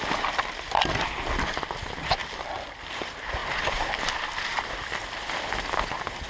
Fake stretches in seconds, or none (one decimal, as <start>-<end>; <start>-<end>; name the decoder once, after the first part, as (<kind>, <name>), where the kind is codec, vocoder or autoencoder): none